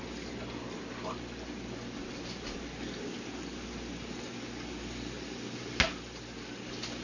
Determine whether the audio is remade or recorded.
recorded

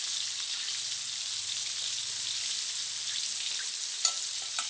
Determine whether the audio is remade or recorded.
recorded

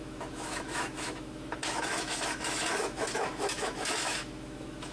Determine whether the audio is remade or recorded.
remade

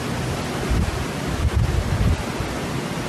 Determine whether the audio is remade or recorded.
recorded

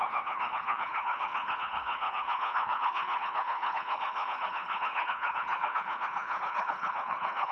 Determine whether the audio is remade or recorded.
remade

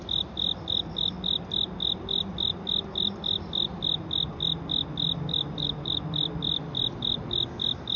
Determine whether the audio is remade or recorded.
recorded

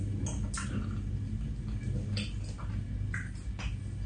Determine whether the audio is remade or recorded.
recorded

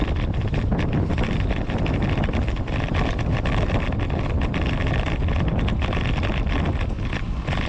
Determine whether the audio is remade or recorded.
recorded